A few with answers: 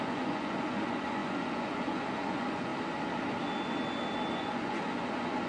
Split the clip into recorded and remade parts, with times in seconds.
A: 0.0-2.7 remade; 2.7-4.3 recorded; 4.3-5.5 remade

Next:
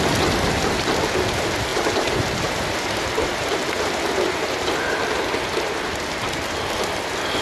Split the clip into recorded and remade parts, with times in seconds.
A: 0.0-1.7 recorded; 1.7-3.4 remade; 3.4-7.4 recorded